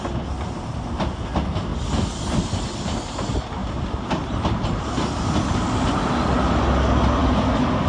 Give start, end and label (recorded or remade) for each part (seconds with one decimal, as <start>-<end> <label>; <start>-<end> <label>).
0.0-7.9 recorded